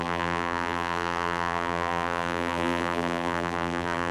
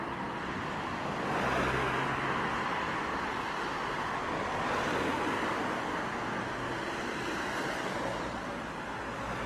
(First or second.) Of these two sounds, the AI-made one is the first